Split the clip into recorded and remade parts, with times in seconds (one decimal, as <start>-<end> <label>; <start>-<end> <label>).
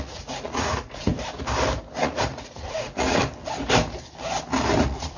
0.0-1.1 remade; 1.1-2.0 recorded; 2.0-3.2 remade; 3.2-4.8 recorded; 4.8-5.2 remade